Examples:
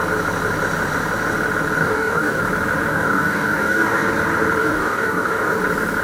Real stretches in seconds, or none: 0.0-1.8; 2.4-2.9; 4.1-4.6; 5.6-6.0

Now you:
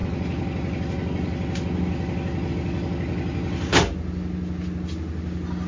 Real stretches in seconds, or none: 0.0-5.7

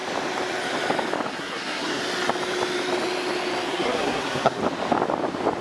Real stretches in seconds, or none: 0.0-1.3; 2.0-3.7; 4.6-5.6